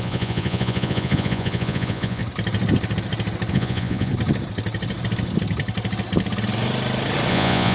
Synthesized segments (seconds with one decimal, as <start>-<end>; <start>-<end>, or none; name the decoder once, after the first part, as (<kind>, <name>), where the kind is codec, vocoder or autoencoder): 0.0-2.2 (vocoder, Vocos); 3.5-4.1; 7.3-7.7